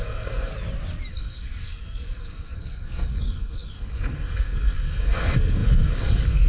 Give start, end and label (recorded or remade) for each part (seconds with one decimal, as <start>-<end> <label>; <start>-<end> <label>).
0.0-0.5 remade; 0.5-1.1 recorded; 1.1-6.5 remade